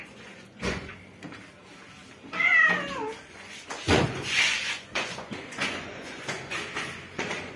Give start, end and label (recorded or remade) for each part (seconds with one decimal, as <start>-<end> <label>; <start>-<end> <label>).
0.0-0.9 remade; 0.9-3.2 recorded; 3.2-7.6 remade